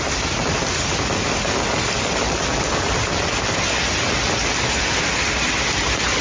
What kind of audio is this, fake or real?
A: real